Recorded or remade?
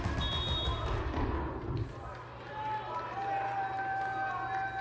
recorded